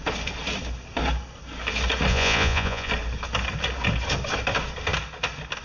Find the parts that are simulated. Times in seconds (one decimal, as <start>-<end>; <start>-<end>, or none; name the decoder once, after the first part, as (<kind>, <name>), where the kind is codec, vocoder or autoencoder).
2.1-2.9 (vocoder, Vocos)